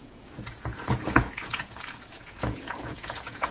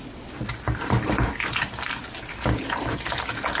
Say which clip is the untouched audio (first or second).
second